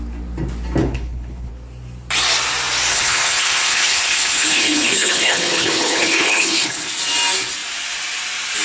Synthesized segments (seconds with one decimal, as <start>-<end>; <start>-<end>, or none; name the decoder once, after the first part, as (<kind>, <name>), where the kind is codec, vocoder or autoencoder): 0.8-1.5 (codec, HILCodec); 2.9-6.9